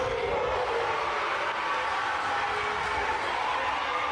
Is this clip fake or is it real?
real